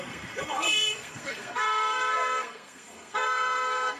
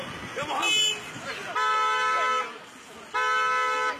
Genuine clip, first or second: second